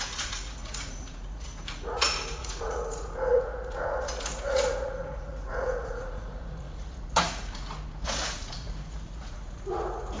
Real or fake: fake